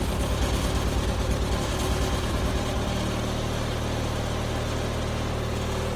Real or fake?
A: real